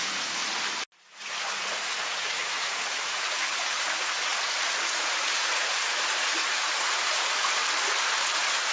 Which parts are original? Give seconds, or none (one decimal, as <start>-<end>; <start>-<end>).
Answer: 0.4-1.4; 7.6-8.7